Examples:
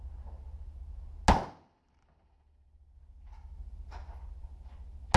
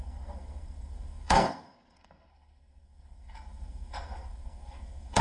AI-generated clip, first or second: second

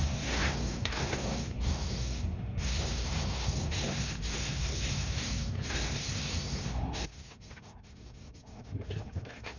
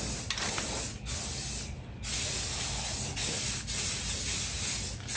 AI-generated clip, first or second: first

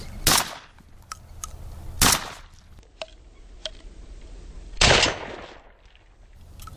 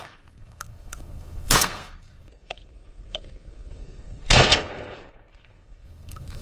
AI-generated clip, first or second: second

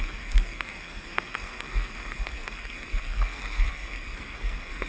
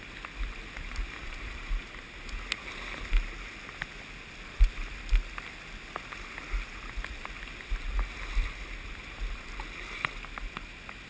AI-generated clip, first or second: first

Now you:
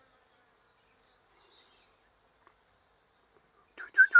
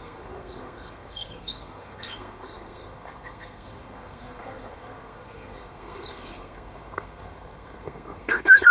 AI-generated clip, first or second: second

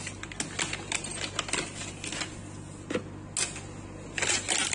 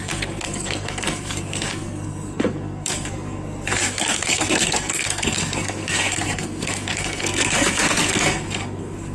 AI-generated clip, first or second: second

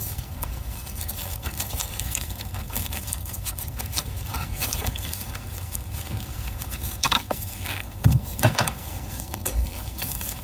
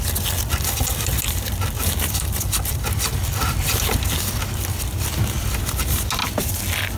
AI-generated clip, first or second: first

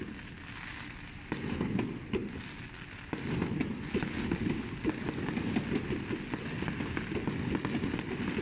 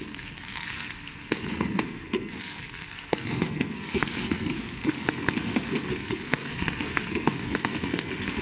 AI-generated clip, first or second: second